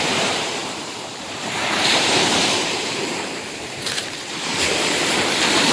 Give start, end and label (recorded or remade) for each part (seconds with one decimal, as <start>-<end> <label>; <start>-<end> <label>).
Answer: 0.0-4.5 remade; 4.5-5.7 recorded